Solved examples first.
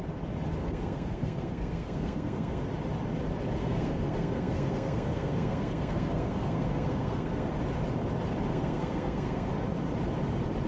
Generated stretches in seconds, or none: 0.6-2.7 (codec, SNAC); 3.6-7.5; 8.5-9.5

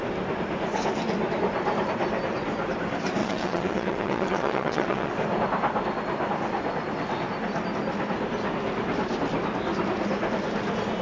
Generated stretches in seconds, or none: 3.2-5.1 (vocoder, WaveNeXt)